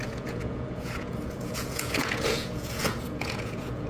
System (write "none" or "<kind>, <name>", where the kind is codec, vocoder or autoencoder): vocoder, Vocos